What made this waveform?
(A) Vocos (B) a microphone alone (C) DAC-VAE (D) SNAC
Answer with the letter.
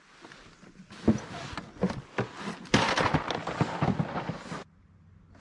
B